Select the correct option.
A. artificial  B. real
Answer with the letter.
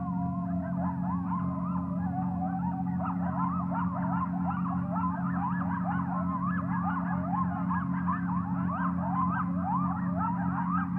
B